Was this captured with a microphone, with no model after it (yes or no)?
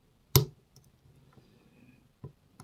yes